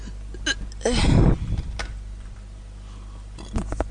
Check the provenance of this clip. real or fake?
real